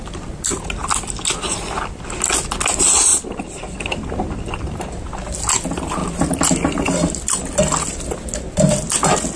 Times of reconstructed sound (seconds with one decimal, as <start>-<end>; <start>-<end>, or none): 3.1-3.8; 6.0-8.9